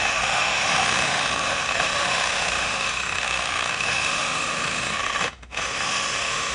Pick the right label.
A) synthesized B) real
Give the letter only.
A